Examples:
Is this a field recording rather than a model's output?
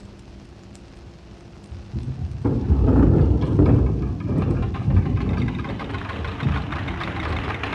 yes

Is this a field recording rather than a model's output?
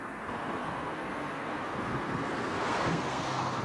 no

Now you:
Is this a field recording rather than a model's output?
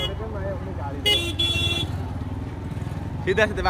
yes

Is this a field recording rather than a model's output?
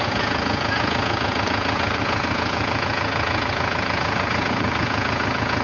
no